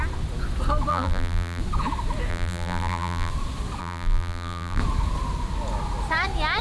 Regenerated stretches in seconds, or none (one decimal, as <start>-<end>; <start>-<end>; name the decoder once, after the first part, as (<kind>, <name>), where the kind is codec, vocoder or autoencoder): 0.9-1.6 (vocoder, BigVGAN v2); 2.3-3.3; 3.8-4.8